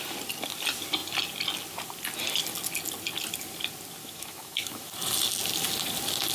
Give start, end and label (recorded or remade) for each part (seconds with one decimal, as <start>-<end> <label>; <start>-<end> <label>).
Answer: 0.0-4.0 recorded; 4.0-4.9 remade; 4.9-6.3 recorded